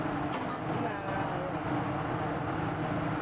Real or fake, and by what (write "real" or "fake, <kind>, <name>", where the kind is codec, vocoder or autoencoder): real